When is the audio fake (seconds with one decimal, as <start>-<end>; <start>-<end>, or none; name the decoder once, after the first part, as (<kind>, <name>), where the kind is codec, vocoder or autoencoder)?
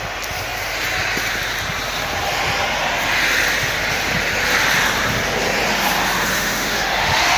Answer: 6.3-7.4 (autoencoder, DAC-VAE)